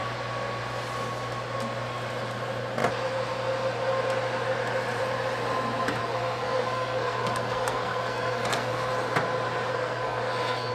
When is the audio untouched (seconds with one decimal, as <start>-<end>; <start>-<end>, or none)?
0.0-6.0; 8.9-9.7

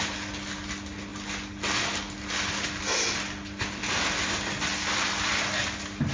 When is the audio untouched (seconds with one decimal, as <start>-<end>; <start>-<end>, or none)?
0.0-6.1

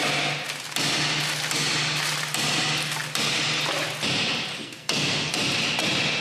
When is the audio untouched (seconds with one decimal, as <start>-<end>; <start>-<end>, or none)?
0.0-4.5; 5.3-6.2